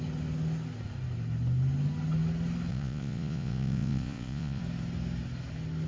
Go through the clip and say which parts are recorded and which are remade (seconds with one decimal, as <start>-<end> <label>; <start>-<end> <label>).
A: 0.0-2.7 recorded; 2.7-4.6 remade; 4.6-5.9 recorded